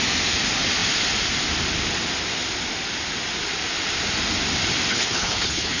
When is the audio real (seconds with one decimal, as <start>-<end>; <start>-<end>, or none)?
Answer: 0.0-4.9